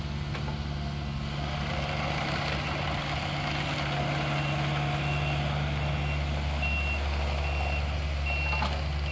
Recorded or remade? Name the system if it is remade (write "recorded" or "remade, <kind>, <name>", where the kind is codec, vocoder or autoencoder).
recorded